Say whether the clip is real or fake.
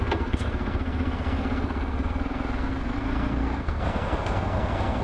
fake